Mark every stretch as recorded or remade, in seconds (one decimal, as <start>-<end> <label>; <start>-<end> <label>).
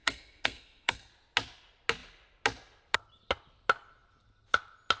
0.0-1.1 remade; 1.1-5.0 recorded